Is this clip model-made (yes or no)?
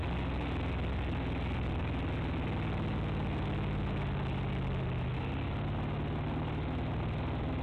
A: no